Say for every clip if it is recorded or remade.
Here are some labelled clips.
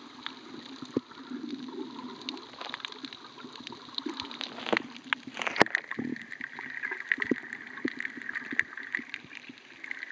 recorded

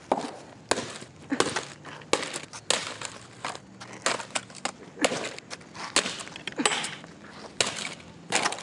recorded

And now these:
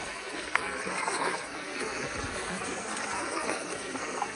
remade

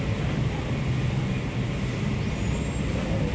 recorded